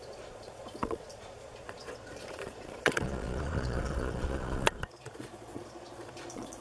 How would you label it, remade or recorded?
remade